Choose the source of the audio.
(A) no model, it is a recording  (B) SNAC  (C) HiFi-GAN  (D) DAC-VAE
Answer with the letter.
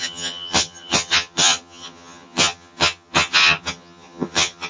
C